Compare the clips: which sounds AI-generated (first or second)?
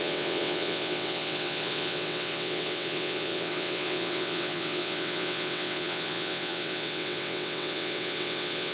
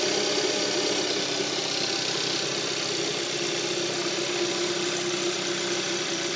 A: first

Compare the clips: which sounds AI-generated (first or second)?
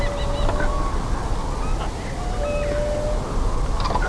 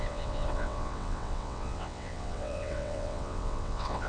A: second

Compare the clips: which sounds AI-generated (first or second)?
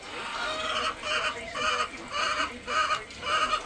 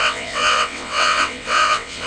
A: second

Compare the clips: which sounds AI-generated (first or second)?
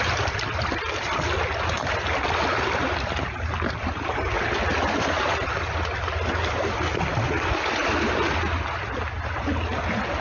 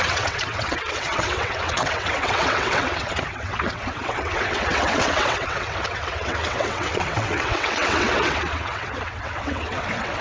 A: second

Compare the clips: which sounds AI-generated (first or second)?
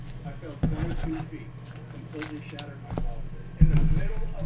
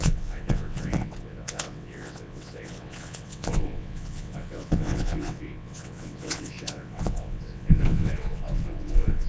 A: second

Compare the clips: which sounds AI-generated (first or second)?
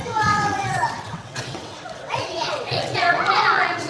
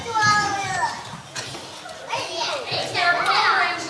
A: first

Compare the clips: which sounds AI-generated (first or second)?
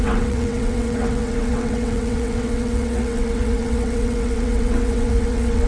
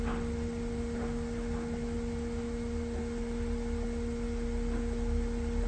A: first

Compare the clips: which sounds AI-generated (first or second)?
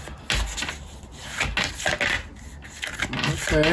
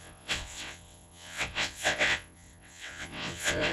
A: second